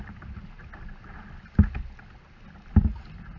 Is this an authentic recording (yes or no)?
yes